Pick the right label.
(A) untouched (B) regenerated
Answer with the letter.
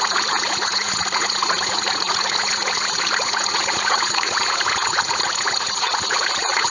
B